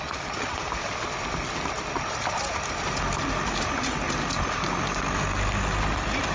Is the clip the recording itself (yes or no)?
yes